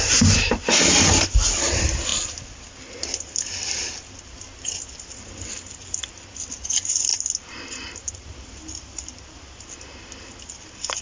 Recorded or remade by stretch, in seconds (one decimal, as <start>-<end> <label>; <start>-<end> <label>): 0.0-11.0 recorded